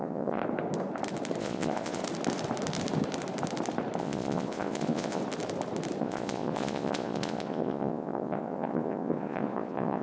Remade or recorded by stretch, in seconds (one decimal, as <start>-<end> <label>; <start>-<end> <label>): 0.0-0.4 remade; 0.4-1.4 recorded; 1.4-2.0 remade; 2.0-4.0 recorded; 4.0-5.2 remade; 5.2-6.0 recorded; 6.0-10.0 remade